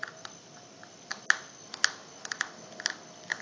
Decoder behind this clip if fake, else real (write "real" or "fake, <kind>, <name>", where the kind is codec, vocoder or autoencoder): real